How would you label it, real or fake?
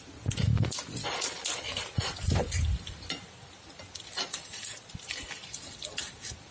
fake